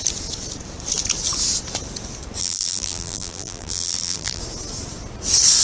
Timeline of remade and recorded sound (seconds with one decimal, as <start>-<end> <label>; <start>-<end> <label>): 0.0-2.4 recorded; 2.4-4.4 remade; 4.4-5.6 recorded

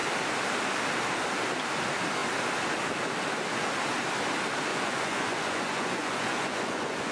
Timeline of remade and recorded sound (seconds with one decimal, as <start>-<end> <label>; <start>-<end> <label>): 0.0-4.7 recorded; 4.7-7.1 remade

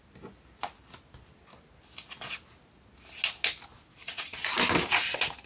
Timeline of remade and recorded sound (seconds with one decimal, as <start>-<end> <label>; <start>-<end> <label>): 0.0-4.0 recorded; 4.0-4.5 remade; 4.5-5.5 recorded